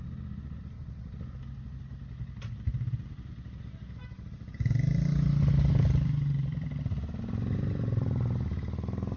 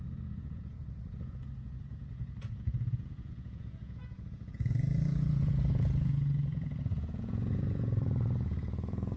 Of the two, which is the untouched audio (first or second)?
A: first